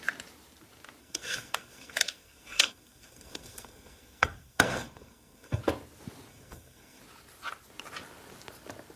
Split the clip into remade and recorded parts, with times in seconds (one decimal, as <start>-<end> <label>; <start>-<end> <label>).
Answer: 0.0-1.0 recorded; 1.0-5.6 remade; 5.6-6.3 recorded; 6.3-7.0 remade; 7.0-9.0 recorded